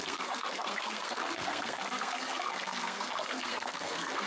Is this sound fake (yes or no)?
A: yes